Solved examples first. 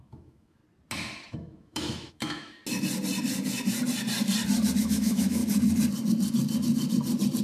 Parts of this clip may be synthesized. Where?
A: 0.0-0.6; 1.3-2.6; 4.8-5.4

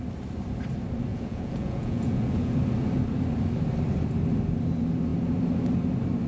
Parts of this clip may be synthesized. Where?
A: 1.1-2.6

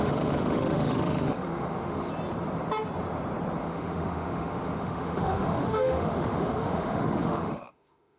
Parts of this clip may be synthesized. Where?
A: 0.0-2.1; 3.6-8.2

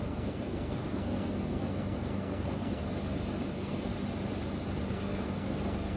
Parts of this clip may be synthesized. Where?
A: 0.0-2.8; 3.5-3.9; 4.9-6.0

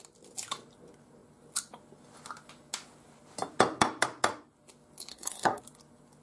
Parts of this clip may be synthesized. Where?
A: 5.1-5.6

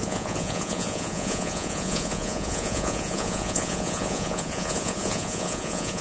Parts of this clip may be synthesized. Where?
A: 0.0-6.0